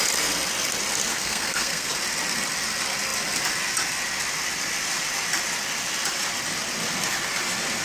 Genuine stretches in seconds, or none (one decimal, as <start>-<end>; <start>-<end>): 0.0-1.1; 1.9-7.8